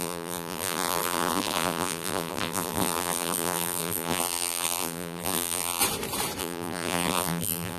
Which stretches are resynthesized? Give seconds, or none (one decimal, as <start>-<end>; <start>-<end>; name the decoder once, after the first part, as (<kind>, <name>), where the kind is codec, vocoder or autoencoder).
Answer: 0.0-5.8 (vocoder, BigVGAN v2); 6.4-7.8